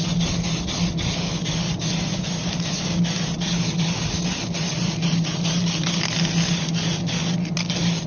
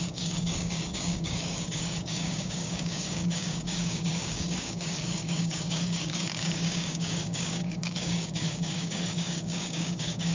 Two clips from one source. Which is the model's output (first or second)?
second